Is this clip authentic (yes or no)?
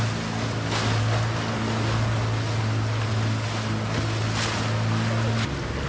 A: yes